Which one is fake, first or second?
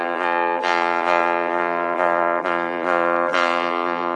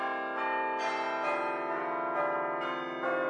first